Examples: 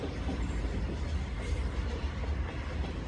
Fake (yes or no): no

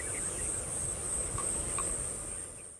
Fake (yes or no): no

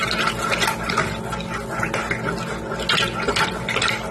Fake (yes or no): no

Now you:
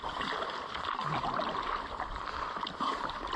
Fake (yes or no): no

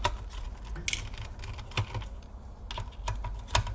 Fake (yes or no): no